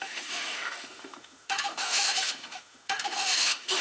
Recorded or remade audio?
remade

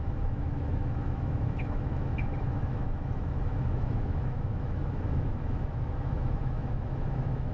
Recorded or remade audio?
remade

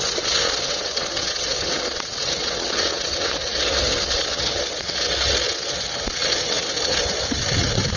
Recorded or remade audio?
remade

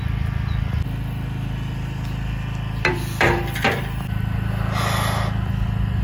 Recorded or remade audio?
recorded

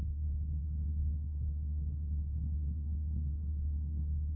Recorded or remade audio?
remade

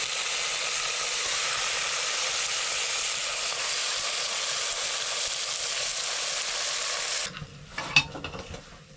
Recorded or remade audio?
recorded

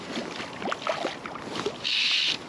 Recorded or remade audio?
recorded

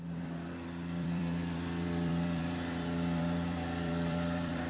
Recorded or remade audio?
remade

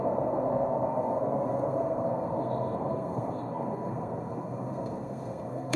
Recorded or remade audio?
remade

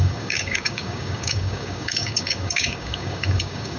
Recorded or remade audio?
remade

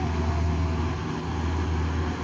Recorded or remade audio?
recorded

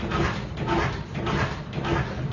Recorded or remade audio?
recorded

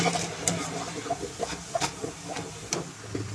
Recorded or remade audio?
recorded